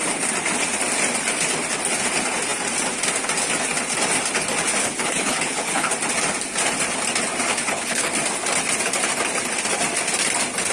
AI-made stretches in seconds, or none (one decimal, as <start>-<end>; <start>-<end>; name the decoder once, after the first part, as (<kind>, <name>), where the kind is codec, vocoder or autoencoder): 4.8-5.9 (codec, HILCodec); 7.5-8.1